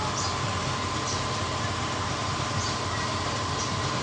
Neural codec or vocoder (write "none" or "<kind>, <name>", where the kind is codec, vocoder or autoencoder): none